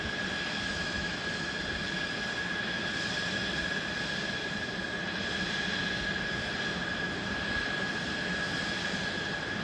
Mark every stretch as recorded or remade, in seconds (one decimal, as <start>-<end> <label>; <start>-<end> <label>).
0.0-0.7 recorded; 0.7-1.3 remade; 1.3-9.6 recorded